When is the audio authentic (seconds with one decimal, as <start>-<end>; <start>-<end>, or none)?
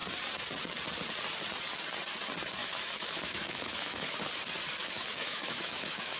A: 0.0-2.6; 4.2-4.8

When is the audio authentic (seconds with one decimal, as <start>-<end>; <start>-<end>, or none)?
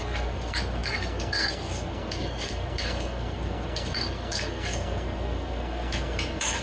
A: none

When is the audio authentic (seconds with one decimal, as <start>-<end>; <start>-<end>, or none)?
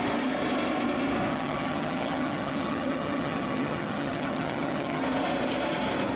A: 0.0-1.3; 5.0-6.2